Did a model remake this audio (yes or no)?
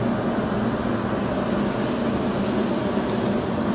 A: no